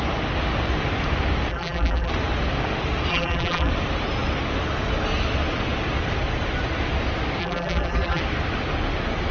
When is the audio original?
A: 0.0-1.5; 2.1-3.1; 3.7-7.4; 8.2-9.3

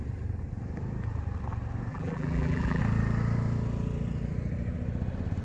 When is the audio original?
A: 0.0-1.9; 2.8-5.4

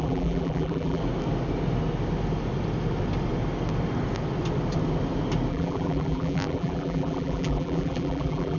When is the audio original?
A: 1.0-5.5